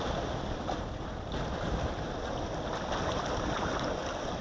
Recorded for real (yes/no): yes